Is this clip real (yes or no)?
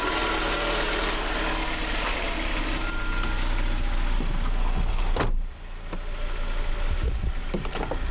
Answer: yes